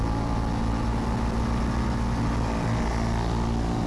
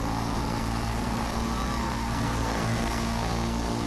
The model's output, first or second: second